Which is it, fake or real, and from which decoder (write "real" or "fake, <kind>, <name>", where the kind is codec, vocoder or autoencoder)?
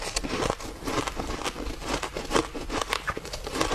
real